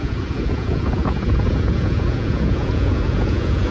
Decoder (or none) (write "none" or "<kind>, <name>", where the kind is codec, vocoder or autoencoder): vocoder, Vocos